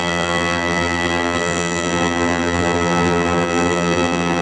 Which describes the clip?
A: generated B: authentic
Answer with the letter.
A